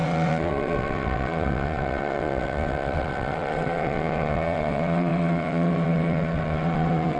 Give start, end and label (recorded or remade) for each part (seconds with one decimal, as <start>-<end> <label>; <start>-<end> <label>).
0.0-7.2 remade